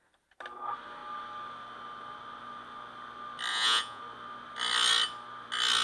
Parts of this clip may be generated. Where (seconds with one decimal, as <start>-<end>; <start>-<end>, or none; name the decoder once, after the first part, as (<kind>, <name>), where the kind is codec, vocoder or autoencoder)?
3.5-4.0 (vocoder, Vocos)